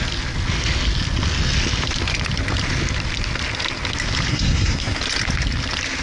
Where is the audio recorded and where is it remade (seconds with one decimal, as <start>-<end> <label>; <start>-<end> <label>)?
0.0-4.3 recorded; 4.3-5.0 remade; 5.0-6.0 recorded